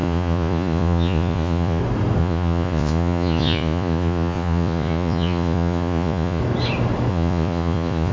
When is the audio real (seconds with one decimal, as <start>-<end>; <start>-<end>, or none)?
1.8-2.2; 6.4-7.1